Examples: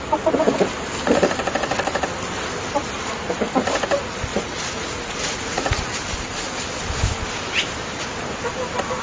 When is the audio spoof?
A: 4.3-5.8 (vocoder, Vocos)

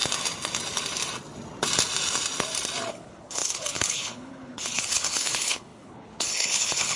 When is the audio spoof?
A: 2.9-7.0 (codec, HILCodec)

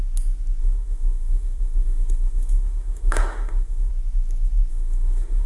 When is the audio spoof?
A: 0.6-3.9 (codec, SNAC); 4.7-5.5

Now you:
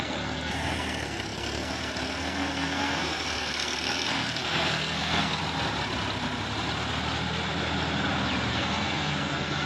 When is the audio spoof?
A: 0.0-5.4 (codec, SNAC); 8.5-9.7

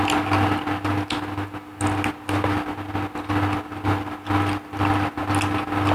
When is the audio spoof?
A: none

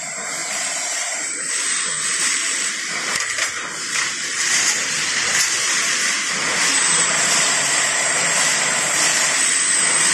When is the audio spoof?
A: 0.0-10.1 (vocoder, BigVGAN v2)